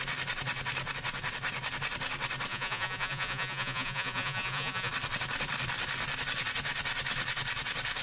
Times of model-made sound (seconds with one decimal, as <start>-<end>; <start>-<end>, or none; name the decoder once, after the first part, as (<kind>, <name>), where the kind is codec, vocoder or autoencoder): 2.5-4.9 (vocoder, Vocos)